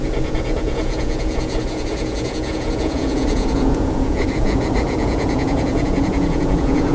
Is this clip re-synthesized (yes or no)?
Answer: yes